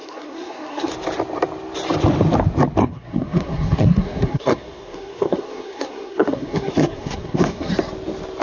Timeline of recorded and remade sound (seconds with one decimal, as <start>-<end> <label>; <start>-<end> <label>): 0.0-0.9 remade; 0.9-2.8 recorded; 2.8-7.7 remade; 7.7-8.4 recorded